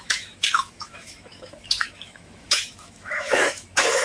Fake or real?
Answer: fake